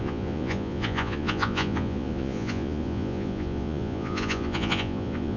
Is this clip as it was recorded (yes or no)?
no